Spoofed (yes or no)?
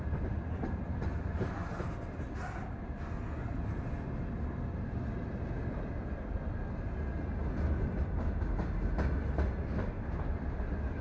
no